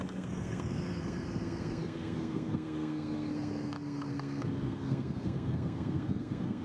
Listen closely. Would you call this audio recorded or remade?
remade